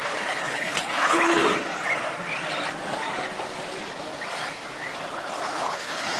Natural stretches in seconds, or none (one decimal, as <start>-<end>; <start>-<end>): 1.4-5.1

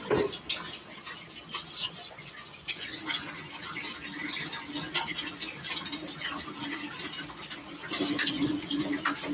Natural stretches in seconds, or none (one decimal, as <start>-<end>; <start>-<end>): 0.0-1.8; 3.0-8.1; 8.7-9.3

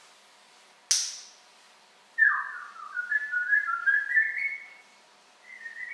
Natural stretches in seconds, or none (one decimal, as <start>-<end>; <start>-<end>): 0.0-2.2